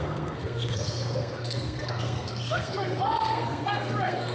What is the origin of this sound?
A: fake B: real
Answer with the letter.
A